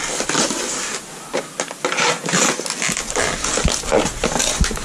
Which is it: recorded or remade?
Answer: recorded